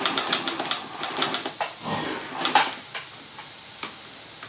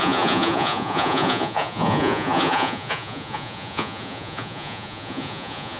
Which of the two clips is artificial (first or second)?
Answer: second